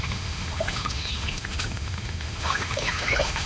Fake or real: fake